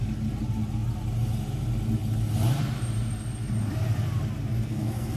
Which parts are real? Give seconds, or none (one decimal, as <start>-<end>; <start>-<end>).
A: 0.0-4.5